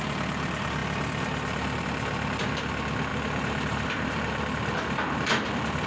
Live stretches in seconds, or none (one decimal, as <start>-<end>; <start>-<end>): 0.0-3.1